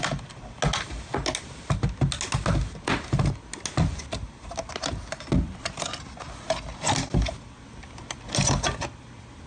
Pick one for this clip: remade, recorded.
recorded